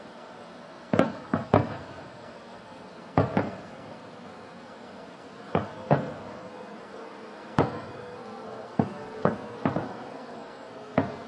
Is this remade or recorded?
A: remade